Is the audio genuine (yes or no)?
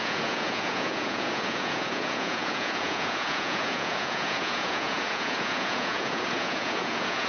no